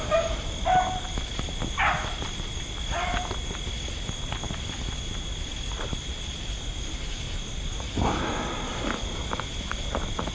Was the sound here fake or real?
real